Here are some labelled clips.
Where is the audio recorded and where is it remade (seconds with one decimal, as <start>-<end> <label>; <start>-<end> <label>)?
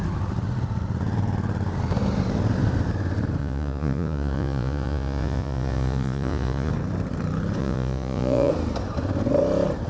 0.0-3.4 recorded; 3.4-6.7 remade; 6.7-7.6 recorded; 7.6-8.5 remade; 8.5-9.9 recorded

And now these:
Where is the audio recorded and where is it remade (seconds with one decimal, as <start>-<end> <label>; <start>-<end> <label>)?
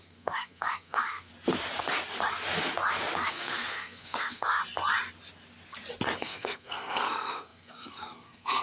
0.0-1.3 remade; 1.3-3.3 recorded; 3.3-4.6 remade; 4.6-6.2 recorded; 6.2-8.6 remade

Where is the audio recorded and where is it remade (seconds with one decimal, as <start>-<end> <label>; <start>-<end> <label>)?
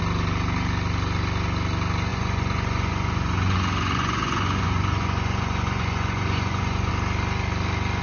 0.0-2.1 recorded; 2.1-6.9 remade; 6.9-8.0 recorded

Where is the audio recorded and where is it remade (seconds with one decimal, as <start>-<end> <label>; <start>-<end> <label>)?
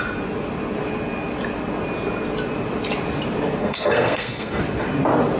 0.0-3.6 recorded; 3.6-4.6 remade; 4.6-5.4 recorded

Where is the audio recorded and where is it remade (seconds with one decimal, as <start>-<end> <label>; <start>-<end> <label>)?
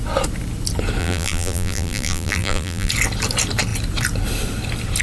0.0-1.0 recorded; 1.0-2.9 remade; 2.9-5.0 recorded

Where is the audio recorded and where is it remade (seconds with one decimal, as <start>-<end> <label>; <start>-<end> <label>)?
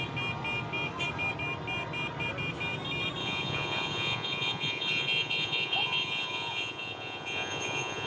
0.0-3.2 recorded; 3.2-8.1 remade